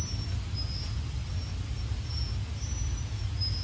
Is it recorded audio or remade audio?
recorded